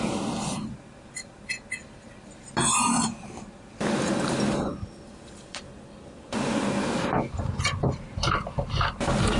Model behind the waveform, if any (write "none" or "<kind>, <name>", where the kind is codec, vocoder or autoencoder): none